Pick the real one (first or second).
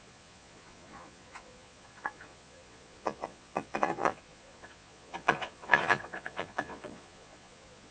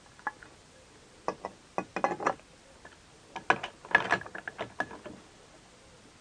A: second